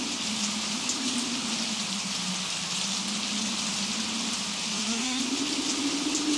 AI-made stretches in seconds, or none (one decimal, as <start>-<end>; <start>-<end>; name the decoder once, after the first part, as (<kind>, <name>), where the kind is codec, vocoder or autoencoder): 4.7-5.2 (codec, SNAC)